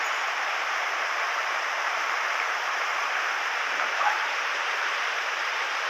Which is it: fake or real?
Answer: fake